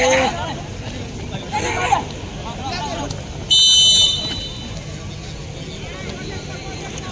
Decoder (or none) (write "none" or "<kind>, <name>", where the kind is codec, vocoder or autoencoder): none